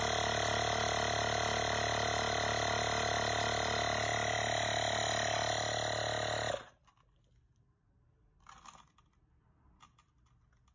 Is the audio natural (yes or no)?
yes